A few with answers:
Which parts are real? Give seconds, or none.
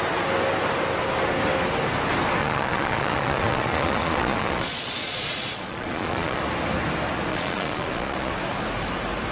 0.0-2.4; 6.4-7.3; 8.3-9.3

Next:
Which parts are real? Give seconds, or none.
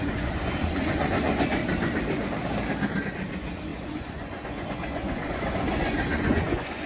1.6-3.0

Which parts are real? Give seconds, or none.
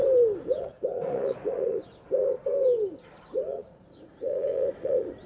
0.0-0.6; 1.8-3.2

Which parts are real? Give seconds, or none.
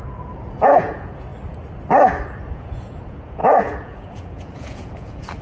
1.3-2.5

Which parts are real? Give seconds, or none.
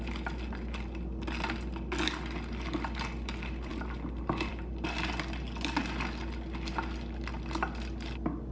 0.0-8.5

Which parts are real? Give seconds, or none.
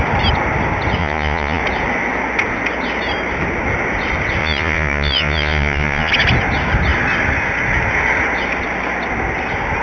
0.0-1.0; 1.6-4.4; 6.1-9.8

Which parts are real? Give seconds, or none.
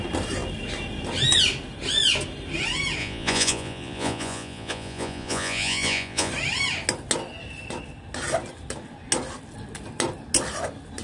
0.0-3.0; 6.3-11.0